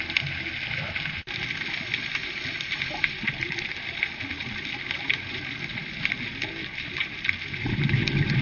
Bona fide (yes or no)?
yes